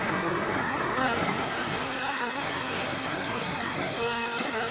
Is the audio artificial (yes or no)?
yes